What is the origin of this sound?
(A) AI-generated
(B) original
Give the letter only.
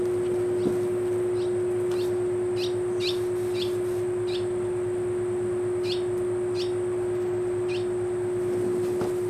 B